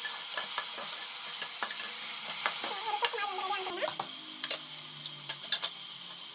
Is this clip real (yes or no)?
yes